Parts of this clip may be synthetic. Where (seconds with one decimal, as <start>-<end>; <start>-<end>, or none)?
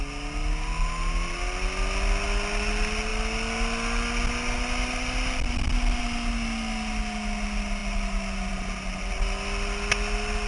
none